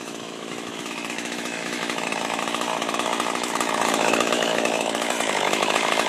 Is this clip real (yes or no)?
no